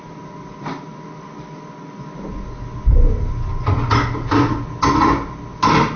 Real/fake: real